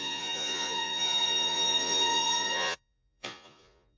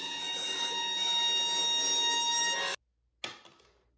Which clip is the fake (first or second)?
first